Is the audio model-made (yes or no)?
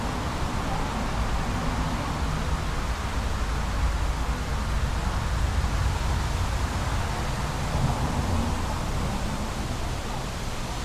no